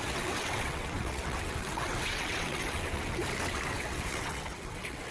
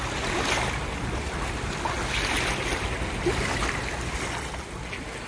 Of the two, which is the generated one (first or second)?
first